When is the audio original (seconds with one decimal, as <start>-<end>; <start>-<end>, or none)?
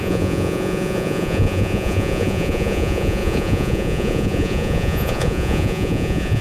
none